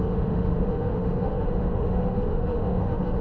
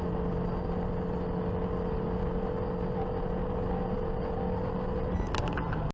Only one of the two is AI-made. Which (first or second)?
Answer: first